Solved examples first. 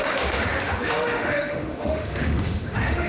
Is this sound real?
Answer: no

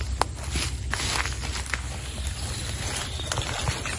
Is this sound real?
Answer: yes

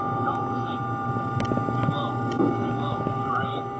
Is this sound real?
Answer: yes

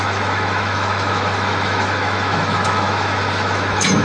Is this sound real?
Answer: no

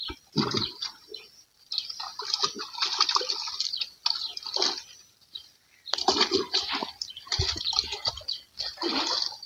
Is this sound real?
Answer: yes